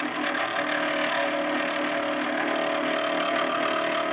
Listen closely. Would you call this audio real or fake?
real